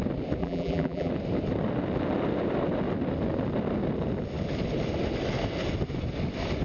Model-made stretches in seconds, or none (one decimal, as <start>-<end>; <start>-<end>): 0.4-1.1